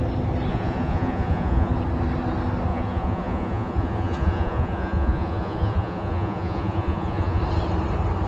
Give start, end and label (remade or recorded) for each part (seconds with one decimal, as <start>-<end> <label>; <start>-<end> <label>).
0.0-0.5 recorded; 0.5-1.7 remade; 1.7-2.7 recorded; 2.7-7.4 remade; 7.4-8.3 recorded